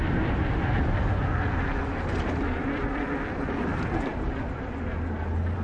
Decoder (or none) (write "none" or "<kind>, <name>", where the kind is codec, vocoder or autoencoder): none